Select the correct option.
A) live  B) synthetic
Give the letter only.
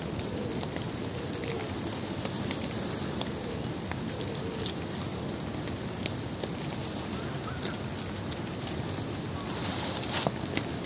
A